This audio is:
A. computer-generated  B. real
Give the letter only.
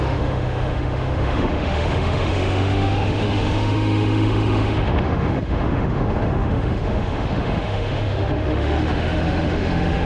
A